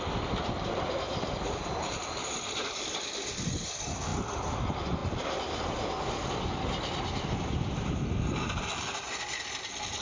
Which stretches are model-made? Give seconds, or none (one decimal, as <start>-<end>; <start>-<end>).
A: none